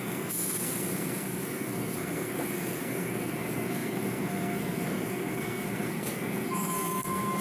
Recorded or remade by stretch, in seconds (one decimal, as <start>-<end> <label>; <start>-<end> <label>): 0.0-7.4 remade